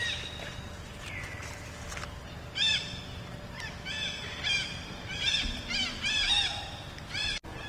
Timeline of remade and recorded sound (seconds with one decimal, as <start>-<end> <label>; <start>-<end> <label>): 0.0-4.6 recorded; 4.6-5.3 remade; 5.3-7.7 recorded